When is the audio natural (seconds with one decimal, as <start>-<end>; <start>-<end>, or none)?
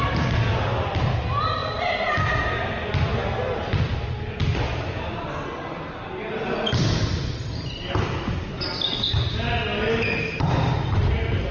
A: 0.0-1.6; 2.2-11.5